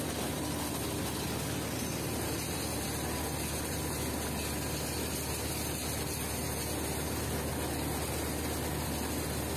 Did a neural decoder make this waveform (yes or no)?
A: no